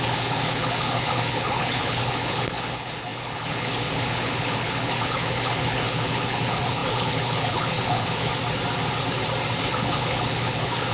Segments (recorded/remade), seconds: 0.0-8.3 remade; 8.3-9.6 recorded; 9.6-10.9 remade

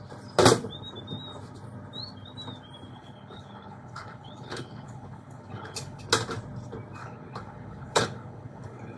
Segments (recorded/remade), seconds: 0.0-2.9 recorded; 2.9-6.0 remade; 6.0-7.0 recorded; 7.0-9.0 remade

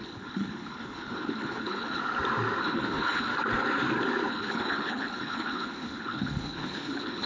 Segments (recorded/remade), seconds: 0.0-2.0 remade; 2.0-2.6 recorded; 2.6-3.3 remade; 3.3-4.3 recorded; 4.3-7.3 remade

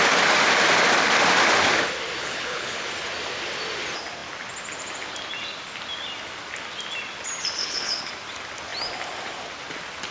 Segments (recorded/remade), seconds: 0.0-2.2 recorded; 2.2-2.9 remade; 2.9-7.6 recorded; 7.6-8.1 remade; 8.1-10.1 recorded

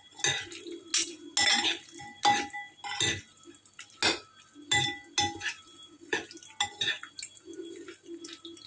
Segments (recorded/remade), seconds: 0.0-8.7 recorded

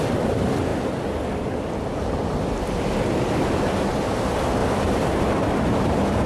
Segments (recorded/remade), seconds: 0.0-6.3 recorded

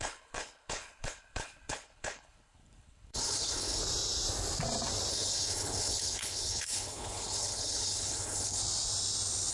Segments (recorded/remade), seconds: 0.0-3.8 remade; 3.8-5.1 recorded; 5.1-8.6 remade; 8.6-9.5 recorded